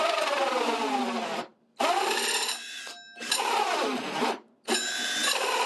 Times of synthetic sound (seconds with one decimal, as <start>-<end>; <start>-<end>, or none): none